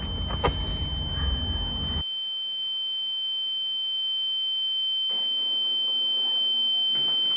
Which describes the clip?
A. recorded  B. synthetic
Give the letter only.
A